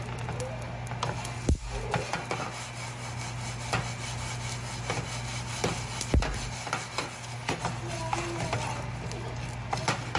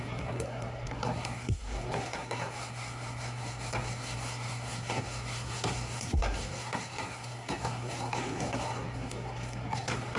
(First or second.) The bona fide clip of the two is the first